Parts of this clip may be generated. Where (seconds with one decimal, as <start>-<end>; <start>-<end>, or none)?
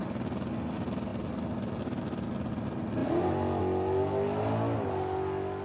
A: 1.1-2.5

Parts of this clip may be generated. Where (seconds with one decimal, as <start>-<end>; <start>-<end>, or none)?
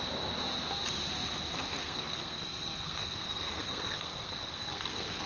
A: 1.8-5.3